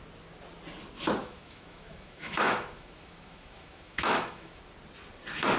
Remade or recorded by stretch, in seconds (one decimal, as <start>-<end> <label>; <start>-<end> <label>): 0.0-1.2 recorded; 1.2-4.6 remade; 4.6-5.6 recorded